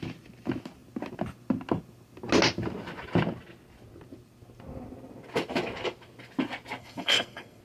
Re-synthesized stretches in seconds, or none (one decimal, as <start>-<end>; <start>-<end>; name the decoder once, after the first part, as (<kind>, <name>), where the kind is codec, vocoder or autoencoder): 6.8-7.6 (codec, SNAC)